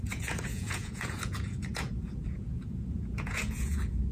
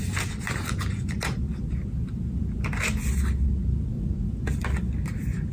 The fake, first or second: first